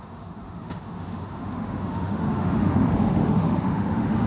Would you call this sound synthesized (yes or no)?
yes